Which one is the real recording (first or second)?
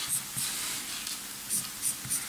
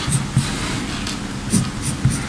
second